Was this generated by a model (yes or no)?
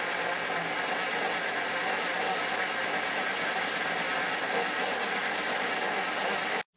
no